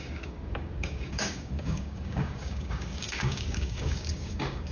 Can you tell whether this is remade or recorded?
remade